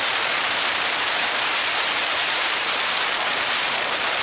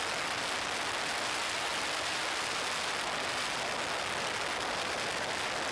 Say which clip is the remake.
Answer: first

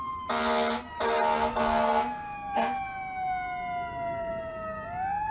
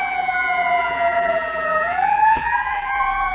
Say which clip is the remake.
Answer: second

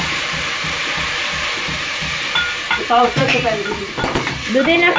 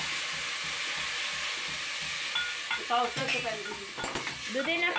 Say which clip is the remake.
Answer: first